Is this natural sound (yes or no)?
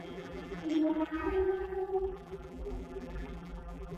no